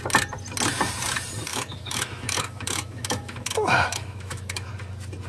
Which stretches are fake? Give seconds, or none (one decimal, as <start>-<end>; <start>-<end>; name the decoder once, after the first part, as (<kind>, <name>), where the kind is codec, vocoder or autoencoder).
1.5-4.7 (autoencoder, DAC-VAE)